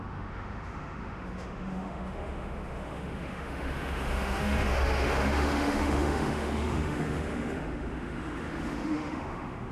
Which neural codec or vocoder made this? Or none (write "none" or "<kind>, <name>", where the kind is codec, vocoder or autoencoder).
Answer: autoencoder, DAC-VAE